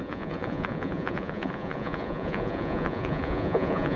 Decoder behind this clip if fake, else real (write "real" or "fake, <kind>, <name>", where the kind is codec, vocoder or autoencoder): fake, vocoder, Vocos